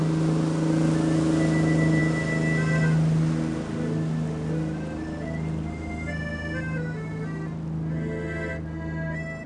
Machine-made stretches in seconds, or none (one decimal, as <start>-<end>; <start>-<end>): none